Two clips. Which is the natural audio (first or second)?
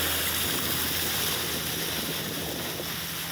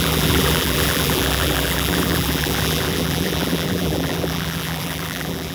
first